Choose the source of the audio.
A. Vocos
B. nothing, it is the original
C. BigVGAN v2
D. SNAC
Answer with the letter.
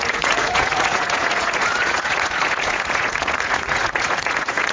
A